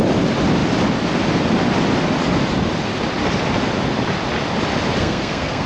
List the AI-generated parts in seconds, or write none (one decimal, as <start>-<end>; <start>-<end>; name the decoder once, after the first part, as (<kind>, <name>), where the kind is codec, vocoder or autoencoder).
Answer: 5.0-5.7 (codec, SNAC)

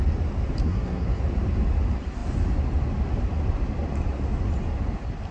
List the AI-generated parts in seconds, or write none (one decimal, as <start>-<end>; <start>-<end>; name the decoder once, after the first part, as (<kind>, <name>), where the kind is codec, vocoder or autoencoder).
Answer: 0.6-1.2 (codec, SNAC)

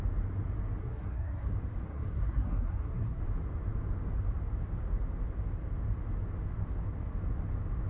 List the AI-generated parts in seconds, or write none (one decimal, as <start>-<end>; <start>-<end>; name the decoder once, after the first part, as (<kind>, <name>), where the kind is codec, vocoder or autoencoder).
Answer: 0.8-1.5 (codec, SNAC); 1.9-3.2

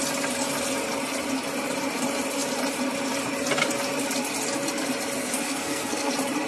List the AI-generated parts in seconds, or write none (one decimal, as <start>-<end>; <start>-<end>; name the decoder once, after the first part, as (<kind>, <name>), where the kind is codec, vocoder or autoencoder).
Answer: 5.2-6.1 (codec, SNAC)

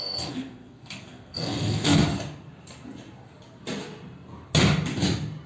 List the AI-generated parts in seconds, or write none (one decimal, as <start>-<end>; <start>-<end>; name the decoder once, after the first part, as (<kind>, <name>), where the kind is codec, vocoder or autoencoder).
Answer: 0.0-2.0 (codec, SNAC)

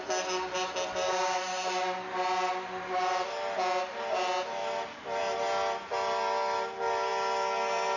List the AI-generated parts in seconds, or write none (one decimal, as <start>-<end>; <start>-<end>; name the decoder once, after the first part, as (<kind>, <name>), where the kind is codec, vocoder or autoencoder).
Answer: none

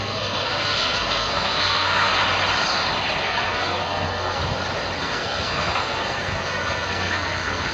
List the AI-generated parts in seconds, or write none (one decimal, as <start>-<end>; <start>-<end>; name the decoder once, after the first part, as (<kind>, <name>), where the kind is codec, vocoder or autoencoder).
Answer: 0.0-2.1 (codec, SNAC); 3.2-4.4; 5.0-7.7

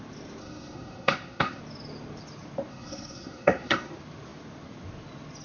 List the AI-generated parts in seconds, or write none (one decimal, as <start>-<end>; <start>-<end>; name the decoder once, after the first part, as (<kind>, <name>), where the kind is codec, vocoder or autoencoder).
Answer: 0.4-1.6 (codec, SNAC); 2.7-3.9